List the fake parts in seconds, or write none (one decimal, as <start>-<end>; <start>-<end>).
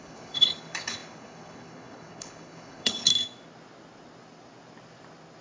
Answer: 0.0-3.1